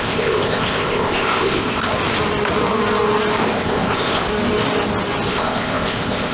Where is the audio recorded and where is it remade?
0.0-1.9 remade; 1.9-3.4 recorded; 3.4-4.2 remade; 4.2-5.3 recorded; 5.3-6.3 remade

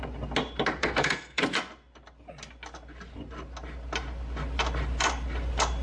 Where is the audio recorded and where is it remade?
0.0-0.8 recorded; 0.8-1.4 remade; 1.4-5.8 recorded

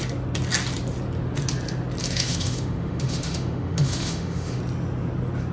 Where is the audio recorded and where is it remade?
0.0-2.0 recorded; 2.0-4.6 remade; 4.6-5.5 recorded

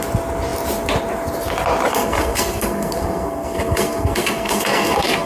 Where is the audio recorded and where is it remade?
0.0-1.9 recorded; 1.9-5.3 remade